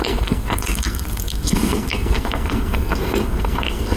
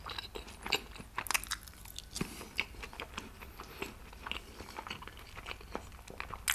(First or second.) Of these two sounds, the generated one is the first